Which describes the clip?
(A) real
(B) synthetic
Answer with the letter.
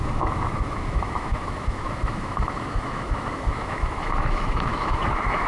B